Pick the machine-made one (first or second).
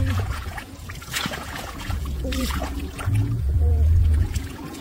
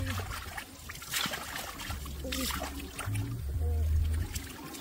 first